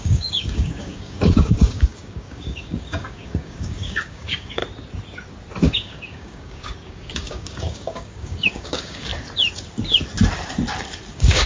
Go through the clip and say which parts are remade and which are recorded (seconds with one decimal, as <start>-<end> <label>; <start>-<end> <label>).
0.0-4.6 remade; 4.6-5.6 recorded; 5.6-9.1 remade; 9.1-11.1 recorded; 11.1-11.5 remade